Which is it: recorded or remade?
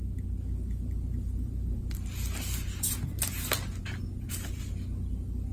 recorded